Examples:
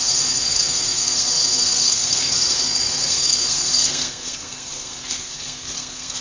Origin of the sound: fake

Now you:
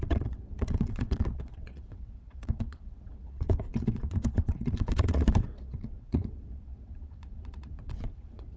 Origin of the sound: fake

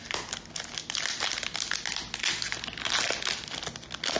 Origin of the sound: real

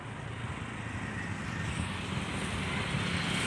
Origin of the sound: real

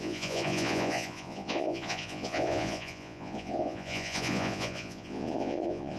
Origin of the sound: fake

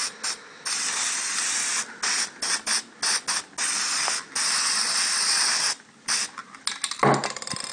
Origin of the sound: real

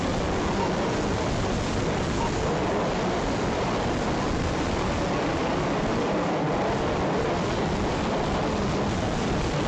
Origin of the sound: real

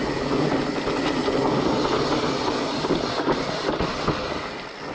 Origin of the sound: real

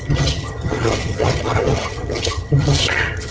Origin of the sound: fake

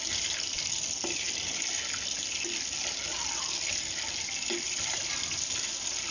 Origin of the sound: real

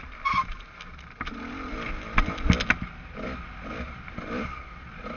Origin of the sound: real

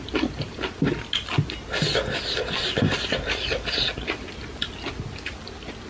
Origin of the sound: real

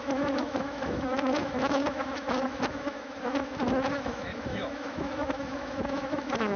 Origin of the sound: fake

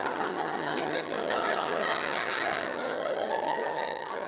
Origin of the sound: fake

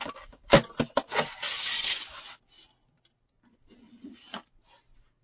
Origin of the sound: real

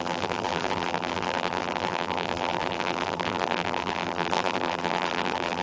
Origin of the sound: fake